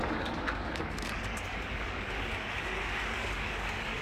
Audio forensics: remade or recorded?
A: remade